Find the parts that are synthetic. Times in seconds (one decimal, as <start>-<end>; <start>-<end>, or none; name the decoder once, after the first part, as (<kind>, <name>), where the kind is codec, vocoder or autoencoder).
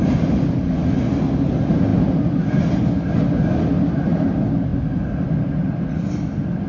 none